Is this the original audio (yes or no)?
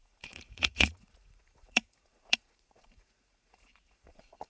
no